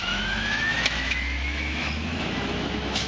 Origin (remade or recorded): remade